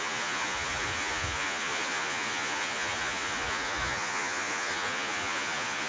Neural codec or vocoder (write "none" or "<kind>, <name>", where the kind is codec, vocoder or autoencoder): vocoder, Vocos